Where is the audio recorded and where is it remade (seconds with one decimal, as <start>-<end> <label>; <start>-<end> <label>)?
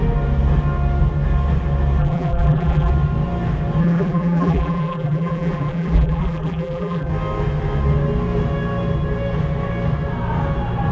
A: 0.0-2.0 recorded; 2.0-2.9 remade; 2.9-3.8 recorded; 3.8-7.1 remade; 7.1-10.9 recorded